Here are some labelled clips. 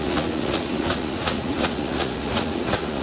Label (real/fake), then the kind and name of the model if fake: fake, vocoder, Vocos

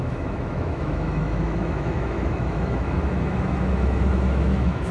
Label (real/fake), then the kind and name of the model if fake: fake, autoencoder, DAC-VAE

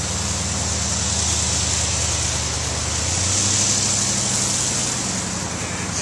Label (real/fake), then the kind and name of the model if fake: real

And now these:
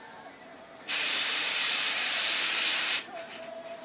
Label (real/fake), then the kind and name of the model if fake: fake, vocoder, BigVGAN v2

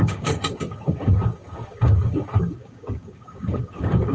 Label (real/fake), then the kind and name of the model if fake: fake, codec, DAC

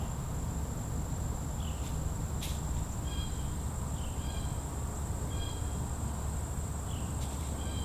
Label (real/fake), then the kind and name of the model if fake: fake, vocoder, BigVGAN v2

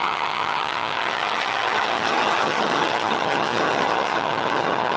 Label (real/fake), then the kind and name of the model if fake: fake, vocoder, HiFi-GAN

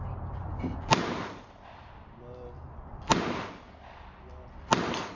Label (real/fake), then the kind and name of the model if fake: real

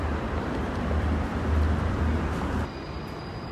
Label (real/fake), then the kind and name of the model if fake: fake, vocoder, BigVGAN v2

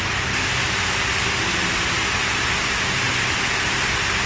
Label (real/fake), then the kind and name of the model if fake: real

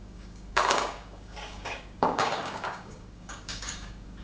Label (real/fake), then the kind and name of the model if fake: fake, codec, DAC